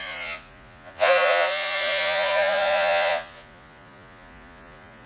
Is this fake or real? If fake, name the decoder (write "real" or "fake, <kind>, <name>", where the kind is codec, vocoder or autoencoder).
fake, vocoder, Vocos